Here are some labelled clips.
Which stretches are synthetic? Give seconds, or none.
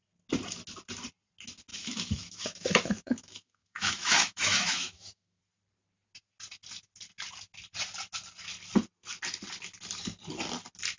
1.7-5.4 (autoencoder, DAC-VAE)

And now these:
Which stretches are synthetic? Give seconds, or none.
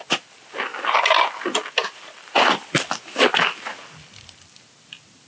none